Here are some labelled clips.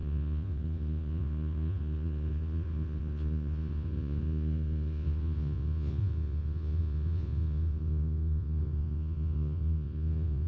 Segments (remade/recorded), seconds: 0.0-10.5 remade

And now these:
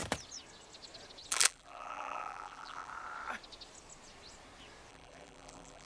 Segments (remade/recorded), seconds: 0.0-1.3 recorded; 1.3-2.9 remade; 2.9-4.9 recorded; 4.9-5.8 remade

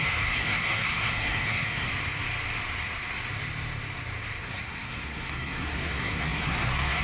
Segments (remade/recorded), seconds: 0.0-1.9 remade; 1.9-4.4 recorded; 4.4-7.0 remade

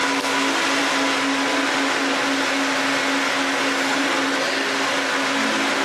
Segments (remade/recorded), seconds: 0.0-5.8 recorded

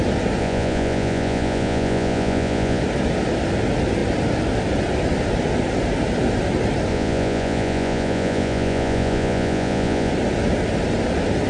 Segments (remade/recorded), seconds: 0.0-0.4 recorded; 0.4-2.8 remade; 2.8-6.9 recorded; 6.9-10.1 remade; 10.1-11.5 recorded

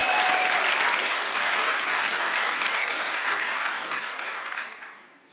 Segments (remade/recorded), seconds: 0.0-1.0 recorded; 1.0-5.3 remade

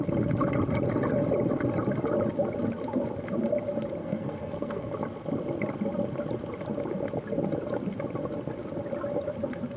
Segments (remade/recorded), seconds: 0.0-4.0 recorded; 4.0-4.9 remade; 4.9-9.8 recorded

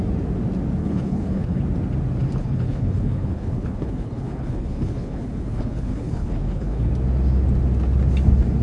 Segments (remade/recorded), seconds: 0.0-0.8 recorded; 0.8-1.6 remade; 1.6-2.4 recorded; 2.4-6.9 remade; 6.9-8.6 recorded